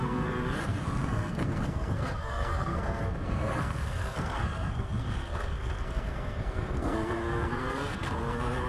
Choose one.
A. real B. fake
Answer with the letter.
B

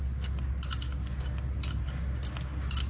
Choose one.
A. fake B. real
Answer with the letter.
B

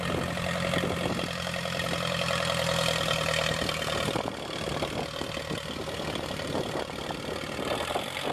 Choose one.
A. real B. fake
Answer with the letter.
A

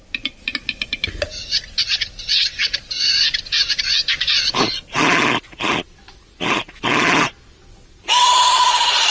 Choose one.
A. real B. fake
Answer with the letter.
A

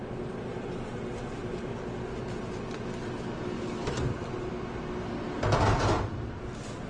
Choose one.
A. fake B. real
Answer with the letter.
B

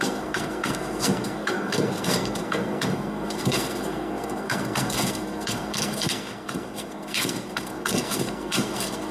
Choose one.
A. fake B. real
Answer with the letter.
A